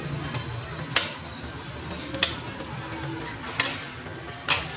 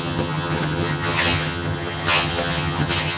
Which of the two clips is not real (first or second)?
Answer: second